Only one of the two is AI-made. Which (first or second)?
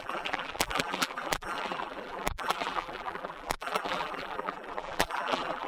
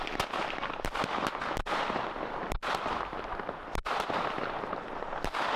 first